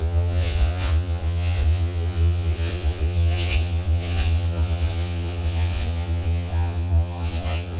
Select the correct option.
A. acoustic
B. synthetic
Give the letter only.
B